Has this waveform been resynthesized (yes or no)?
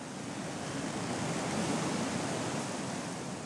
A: no